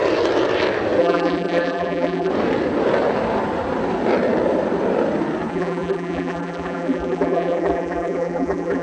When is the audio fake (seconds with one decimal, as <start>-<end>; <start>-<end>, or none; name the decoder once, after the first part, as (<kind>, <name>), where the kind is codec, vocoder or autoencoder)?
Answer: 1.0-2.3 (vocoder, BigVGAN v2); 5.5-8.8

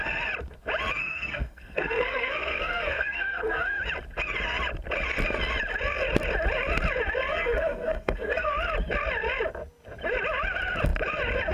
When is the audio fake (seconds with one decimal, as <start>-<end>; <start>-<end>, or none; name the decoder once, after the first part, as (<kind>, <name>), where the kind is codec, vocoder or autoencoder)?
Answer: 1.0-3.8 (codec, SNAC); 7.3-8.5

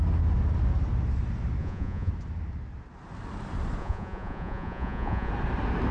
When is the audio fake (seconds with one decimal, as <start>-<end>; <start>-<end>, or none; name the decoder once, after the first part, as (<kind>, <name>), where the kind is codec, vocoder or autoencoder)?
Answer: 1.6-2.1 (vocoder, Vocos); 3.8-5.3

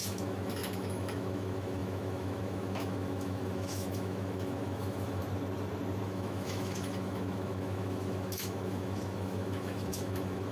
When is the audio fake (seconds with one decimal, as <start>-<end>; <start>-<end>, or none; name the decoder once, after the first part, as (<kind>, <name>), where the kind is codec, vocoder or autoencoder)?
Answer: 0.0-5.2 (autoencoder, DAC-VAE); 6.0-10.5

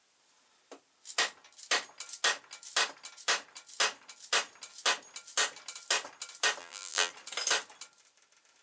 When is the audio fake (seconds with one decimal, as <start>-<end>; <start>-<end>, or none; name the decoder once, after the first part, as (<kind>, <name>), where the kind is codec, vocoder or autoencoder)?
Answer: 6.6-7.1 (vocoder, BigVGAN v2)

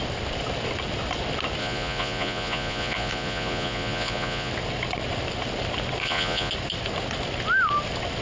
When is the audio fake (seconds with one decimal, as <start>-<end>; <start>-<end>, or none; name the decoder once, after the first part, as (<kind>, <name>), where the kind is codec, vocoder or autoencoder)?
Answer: 1.6-4.5 (vocoder, Vocos); 6.0-6.5